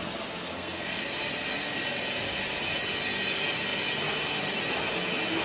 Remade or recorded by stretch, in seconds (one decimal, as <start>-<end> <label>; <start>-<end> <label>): 0.0-0.5 recorded; 0.5-1.0 remade; 1.0-5.4 recorded